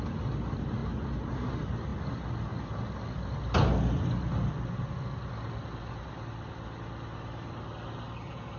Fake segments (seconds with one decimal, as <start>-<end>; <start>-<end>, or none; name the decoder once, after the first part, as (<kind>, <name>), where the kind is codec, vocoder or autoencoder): none